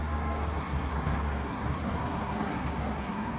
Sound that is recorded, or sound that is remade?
remade